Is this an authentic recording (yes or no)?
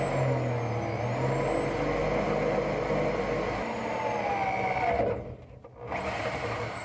yes